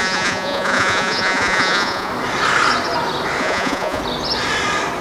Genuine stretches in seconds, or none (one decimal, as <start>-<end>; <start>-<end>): 2.1-3.4; 4.0-5.0